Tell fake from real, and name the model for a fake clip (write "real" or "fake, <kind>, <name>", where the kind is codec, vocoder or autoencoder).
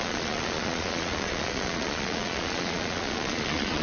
fake, vocoder, Vocos